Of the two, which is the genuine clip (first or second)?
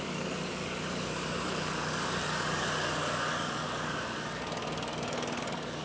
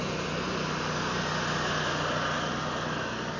second